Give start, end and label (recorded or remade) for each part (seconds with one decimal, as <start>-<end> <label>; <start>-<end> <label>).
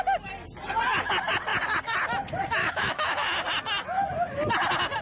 0.0-2.6 recorded; 2.6-3.3 remade; 3.3-5.0 recorded